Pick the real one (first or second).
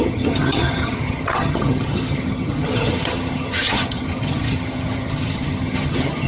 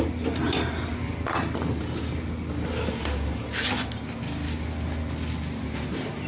second